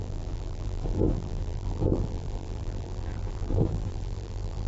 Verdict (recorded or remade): remade